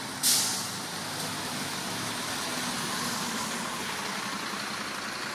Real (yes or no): yes